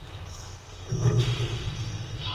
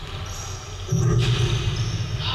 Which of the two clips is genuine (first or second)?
second